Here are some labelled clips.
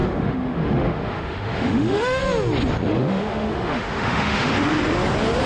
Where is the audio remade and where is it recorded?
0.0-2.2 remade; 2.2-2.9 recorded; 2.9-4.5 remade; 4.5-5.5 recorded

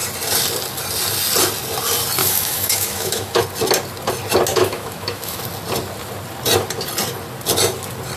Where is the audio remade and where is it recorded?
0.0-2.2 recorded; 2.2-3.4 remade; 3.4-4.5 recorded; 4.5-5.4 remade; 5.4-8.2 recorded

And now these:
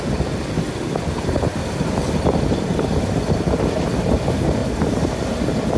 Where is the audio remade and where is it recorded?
0.0-5.8 recorded